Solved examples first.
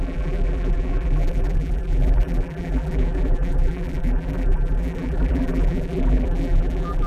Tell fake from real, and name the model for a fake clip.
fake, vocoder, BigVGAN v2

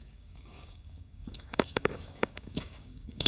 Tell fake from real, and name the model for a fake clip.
fake, codec, DAC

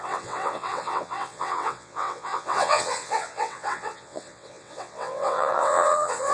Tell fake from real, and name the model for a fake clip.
fake, vocoder, WaveNeXt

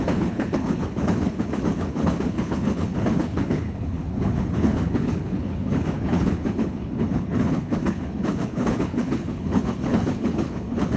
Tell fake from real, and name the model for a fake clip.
fake, codec, HILCodec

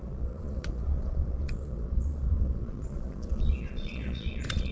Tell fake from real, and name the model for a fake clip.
fake, vocoder, Vocos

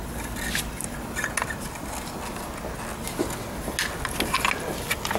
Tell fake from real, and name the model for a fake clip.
real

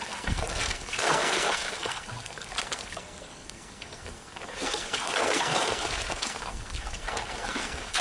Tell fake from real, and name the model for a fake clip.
fake, codec, SNAC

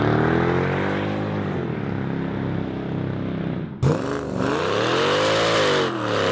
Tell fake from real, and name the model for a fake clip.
real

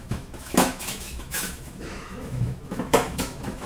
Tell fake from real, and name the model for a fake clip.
fake, autoencoder, DAC-VAE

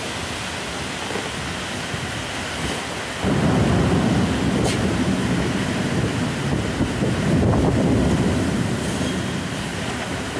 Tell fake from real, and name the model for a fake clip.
real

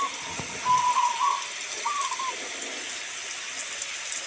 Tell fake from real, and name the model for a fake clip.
real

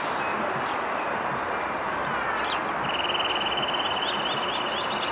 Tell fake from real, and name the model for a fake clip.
real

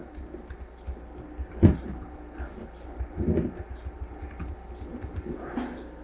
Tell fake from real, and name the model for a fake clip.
real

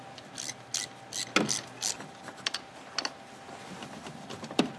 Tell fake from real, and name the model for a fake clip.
real